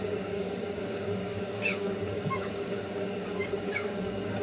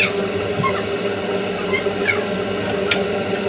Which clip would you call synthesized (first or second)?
first